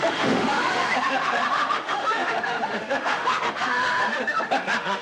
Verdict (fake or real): fake